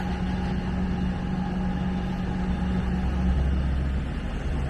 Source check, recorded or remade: recorded